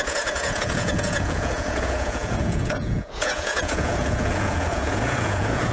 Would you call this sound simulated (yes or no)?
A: yes